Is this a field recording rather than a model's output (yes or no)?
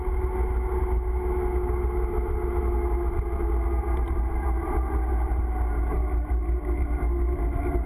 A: yes